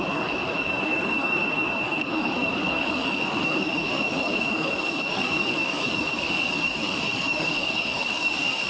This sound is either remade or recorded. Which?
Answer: remade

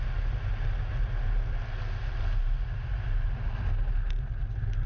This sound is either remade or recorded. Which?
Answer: recorded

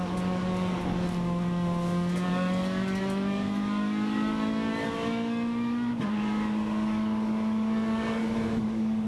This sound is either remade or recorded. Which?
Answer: remade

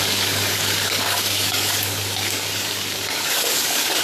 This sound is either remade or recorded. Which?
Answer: remade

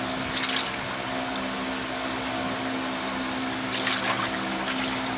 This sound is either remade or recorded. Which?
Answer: recorded